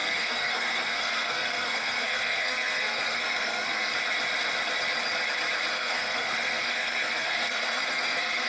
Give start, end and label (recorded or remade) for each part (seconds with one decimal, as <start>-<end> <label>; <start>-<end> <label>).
0.0-3.9 remade; 3.9-5.7 recorded; 5.7-8.5 remade